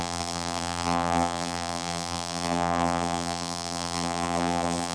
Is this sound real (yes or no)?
no